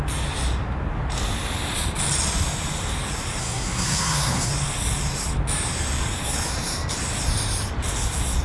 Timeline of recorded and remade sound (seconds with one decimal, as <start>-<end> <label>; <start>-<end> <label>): 0.0-3.4 recorded; 3.4-4.5 remade; 4.5-8.4 recorded

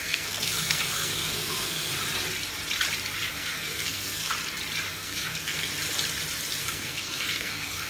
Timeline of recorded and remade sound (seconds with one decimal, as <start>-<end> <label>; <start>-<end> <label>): 0.0-1.9 remade; 1.9-3.3 recorded; 3.3-4.3 remade; 4.3-4.9 recorded; 4.9-5.7 remade; 5.7-6.6 recorded; 6.6-7.9 remade

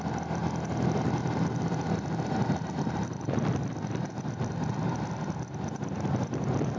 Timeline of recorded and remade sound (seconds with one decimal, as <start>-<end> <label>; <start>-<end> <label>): 0.0-6.8 recorded

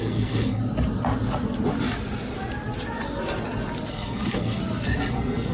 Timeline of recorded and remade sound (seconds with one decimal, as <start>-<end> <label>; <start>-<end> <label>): 0.0-0.6 remade; 0.6-3.9 recorded; 3.9-4.6 remade; 4.6-5.1 recorded; 5.1-5.5 remade

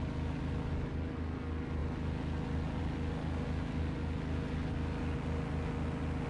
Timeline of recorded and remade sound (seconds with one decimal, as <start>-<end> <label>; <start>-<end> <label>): 0.0-6.3 recorded

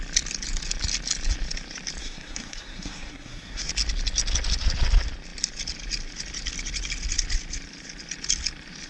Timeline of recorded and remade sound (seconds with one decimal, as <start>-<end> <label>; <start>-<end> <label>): 0.0-2.0 recorded; 2.0-3.7 remade; 3.7-8.9 recorded

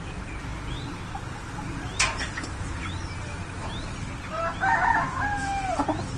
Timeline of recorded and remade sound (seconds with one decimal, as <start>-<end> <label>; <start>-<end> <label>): 0.0-6.2 recorded

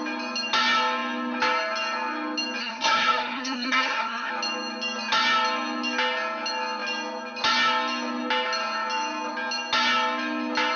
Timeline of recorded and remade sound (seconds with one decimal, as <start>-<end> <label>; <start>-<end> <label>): 0.0-2.6 recorded; 2.6-4.3 remade; 4.3-10.8 recorded